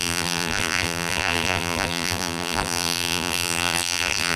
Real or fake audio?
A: fake